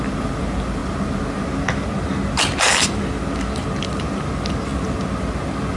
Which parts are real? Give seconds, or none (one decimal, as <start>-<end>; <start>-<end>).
0.0-5.8

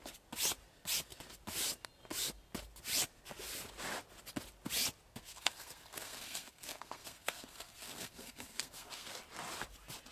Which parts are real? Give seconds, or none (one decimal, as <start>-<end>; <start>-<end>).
0.0-5.1; 9.2-10.1

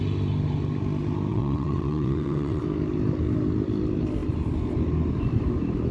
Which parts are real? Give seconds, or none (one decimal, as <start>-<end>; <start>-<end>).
0.0-1.3; 2.6-5.9

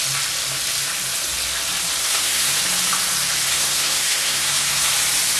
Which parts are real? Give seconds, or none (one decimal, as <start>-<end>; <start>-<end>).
0.0-2.0; 2.6-3.5; 4.9-5.4

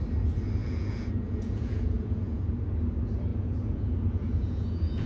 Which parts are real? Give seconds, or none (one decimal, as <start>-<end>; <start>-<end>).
0.0-0.6; 2.6-3.3

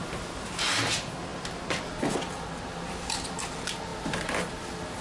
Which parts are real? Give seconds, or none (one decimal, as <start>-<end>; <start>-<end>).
0.0-5.0

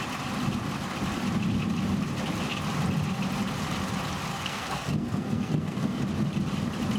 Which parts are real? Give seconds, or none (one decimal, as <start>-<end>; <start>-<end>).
0.0-4.3; 6.0-7.0